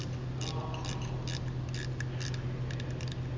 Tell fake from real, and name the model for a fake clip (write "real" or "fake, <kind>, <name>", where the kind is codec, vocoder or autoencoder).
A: real